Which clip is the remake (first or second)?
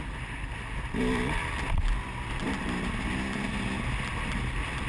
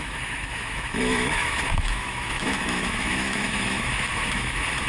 second